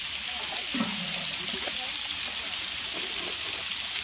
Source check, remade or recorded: recorded